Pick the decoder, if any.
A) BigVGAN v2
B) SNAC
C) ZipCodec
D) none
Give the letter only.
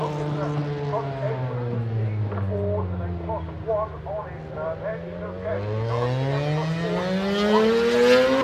D